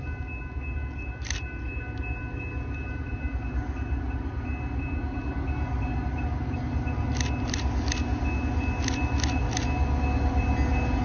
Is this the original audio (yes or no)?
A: yes